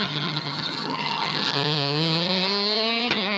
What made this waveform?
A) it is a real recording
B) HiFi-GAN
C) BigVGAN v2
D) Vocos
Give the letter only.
B